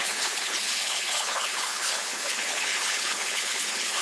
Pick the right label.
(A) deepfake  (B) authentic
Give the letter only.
A